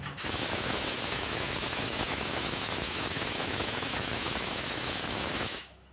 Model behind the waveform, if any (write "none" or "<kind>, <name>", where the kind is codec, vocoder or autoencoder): autoencoder, DAC-VAE